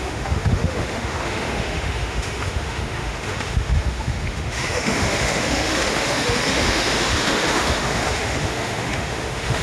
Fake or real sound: fake